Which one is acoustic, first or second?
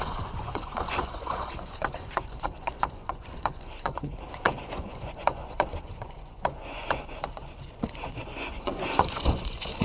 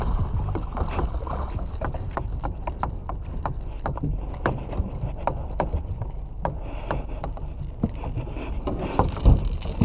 second